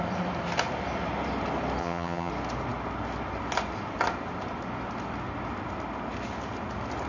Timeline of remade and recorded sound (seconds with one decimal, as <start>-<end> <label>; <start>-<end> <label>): 0.0-1.8 recorded; 1.8-2.3 remade; 2.3-7.1 recorded